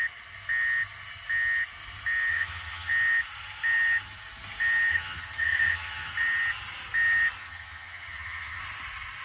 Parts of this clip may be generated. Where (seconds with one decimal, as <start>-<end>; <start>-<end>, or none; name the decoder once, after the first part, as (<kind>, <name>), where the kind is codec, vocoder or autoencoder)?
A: 2.3-2.9 (vocoder, HiFi-GAN); 4.9-6.1; 7.4-8.6